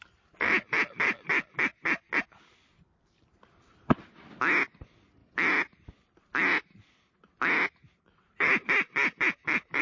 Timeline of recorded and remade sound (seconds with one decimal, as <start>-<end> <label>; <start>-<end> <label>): 0.0-9.8 recorded